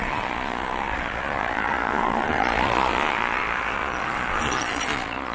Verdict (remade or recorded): remade